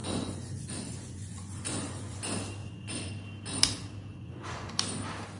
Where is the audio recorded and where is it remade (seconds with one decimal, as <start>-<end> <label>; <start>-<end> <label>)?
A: 0.0-2.2 remade; 2.2-2.6 recorded; 2.6-3.1 remade; 3.1-4.1 recorded; 4.1-4.7 remade; 4.7-5.4 recorded